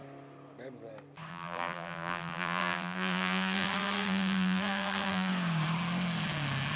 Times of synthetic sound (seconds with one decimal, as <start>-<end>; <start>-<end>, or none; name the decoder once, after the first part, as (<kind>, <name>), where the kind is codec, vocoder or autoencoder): 1.3-5.3 (vocoder, BigVGAN v2)